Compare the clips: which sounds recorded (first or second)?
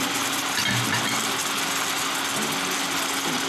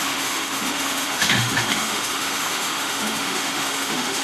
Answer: first